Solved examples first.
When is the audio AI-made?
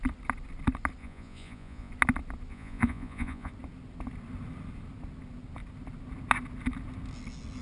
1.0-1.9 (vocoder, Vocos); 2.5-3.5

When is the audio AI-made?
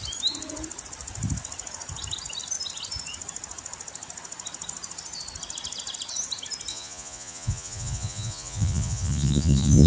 6.7-9.9 (vocoder, Vocos)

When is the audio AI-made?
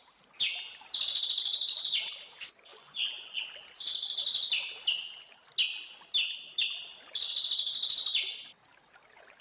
2.7-3.4 (vocoder, Vocos)